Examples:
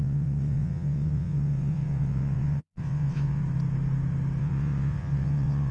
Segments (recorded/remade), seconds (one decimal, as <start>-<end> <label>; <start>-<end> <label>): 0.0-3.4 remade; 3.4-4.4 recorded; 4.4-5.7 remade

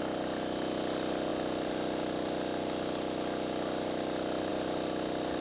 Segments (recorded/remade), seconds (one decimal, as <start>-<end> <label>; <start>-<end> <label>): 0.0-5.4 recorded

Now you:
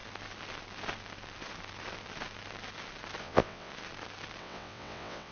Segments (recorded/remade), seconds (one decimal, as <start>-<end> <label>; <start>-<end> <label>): 0.0-3.2 recorded; 3.2-3.7 remade; 3.7-4.4 recorded; 4.4-5.3 remade